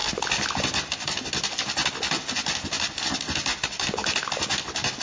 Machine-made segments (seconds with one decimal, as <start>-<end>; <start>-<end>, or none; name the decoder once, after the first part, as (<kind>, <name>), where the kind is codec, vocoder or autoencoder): 0.0-3.0 (vocoder, BigVGAN v2)